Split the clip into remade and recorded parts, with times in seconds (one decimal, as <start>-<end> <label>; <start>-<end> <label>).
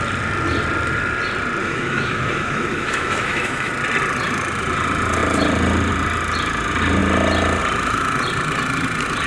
0.0-1.6 recorded; 1.6-3.7 remade; 3.7-9.3 recorded